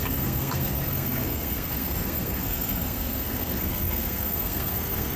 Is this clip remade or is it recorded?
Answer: remade